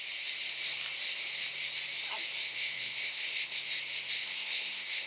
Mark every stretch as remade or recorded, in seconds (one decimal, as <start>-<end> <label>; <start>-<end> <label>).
0.0-2.4 recorded; 2.4-3.6 remade; 3.6-4.2 recorded; 4.2-5.1 remade